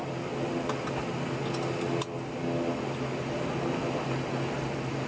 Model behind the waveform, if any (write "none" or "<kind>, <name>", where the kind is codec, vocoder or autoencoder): none